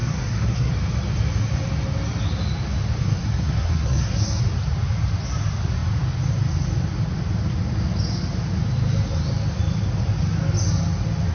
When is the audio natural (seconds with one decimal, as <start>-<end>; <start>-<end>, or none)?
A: 0.7-3.0; 4.4-11.3